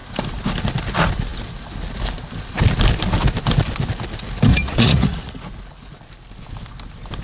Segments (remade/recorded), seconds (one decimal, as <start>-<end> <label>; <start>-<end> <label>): 0.0-4.5 recorded; 4.5-5.5 remade; 5.5-7.2 recorded